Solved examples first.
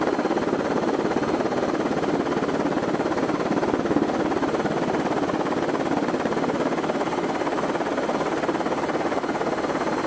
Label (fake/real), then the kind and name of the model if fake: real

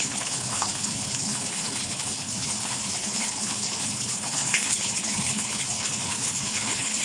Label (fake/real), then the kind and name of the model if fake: fake, codec, HILCodec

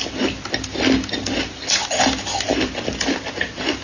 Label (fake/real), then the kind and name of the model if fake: fake, vocoder, BigVGAN v2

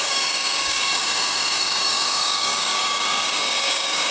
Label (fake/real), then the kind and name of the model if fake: fake, codec, DAC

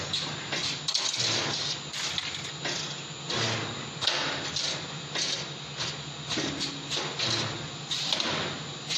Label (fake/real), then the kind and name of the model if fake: real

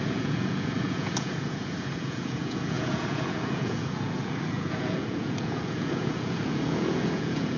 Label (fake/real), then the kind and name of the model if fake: fake, vocoder, Vocos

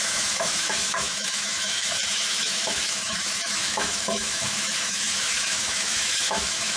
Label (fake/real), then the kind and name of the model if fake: fake, autoencoder, DAC-VAE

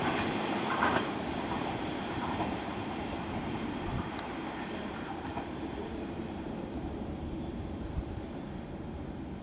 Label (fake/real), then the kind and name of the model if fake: fake, vocoder, BigVGAN v2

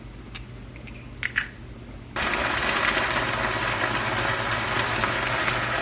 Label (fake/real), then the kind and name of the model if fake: real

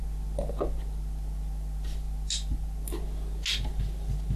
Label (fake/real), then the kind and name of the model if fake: real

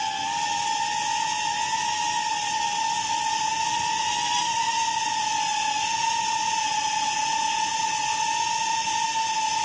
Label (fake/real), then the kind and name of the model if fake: real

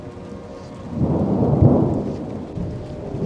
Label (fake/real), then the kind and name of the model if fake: real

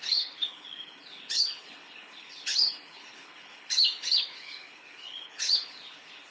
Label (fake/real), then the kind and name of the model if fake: fake, codec, HILCodec